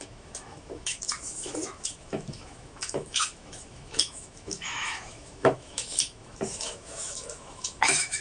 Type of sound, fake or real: fake